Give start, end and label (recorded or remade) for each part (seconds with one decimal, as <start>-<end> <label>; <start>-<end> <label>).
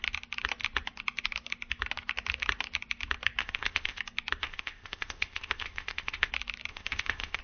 0.0-3.4 recorded; 3.4-4.0 remade; 4.0-4.4 recorded; 4.4-6.3 remade; 6.3-6.7 recorded; 6.7-7.4 remade